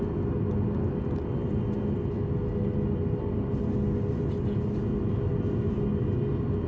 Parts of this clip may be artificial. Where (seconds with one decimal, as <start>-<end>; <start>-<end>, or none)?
none